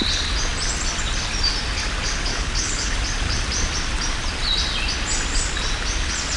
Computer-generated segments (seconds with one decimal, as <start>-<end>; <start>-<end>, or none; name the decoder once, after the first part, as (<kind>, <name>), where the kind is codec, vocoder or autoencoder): 2.3-2.9 (codec, HILCodec)